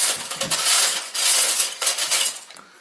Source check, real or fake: fake